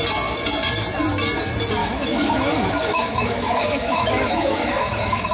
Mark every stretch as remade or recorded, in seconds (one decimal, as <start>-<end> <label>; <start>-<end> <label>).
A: 0.0-1.8 recorded; 1.8-5.3 remade